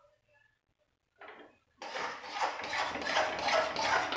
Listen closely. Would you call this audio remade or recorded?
recorded